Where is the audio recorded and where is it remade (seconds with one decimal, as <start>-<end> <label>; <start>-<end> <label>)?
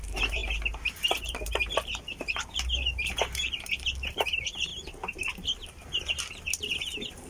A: 0.0-4.7 remade; 4.7-7.3 recorded